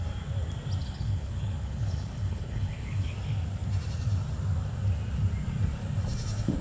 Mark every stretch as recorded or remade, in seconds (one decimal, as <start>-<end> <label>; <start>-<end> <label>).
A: 0.0-0.8 recorded; 0.8-3.1 remade; 3.1-6.6 recorded